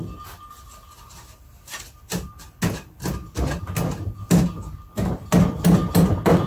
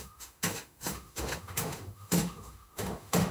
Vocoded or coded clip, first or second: second